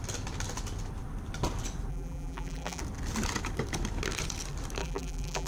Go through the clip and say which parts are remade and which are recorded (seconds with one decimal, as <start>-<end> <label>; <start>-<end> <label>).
0.0-1.9 recorded; 1.9-2.8 remade; 2.8-4.8 recorded; 4.8-5.5 remade